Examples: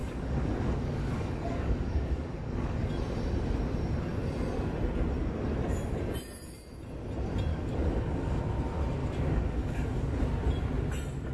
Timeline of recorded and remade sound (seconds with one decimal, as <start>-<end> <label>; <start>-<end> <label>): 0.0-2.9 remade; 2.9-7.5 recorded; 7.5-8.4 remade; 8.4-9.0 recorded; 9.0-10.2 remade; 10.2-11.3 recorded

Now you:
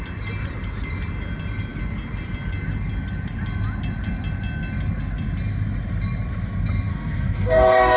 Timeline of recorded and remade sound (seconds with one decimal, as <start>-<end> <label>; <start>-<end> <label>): 0.0-6.9 recorded; 6.9-8.0 remade

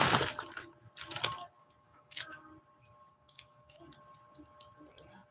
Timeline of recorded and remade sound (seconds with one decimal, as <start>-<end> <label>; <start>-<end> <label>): 0.0-1.6 recorded; 1.6-2.4 remade; 2.4-3.1 recorded; 3.1-3.8 remade; 3.8-5.3 recorded

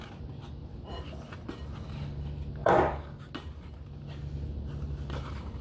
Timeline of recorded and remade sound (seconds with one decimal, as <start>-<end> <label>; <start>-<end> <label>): 0.0-2.6 recorded; 2.6-3.3 remade; 3.3-5.6 recorded

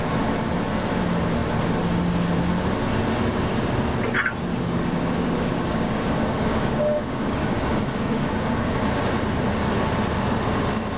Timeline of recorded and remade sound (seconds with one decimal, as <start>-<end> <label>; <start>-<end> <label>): 0.0-4.5 recorded; 4.5-8.7 remade; 8.7-11.0 recorded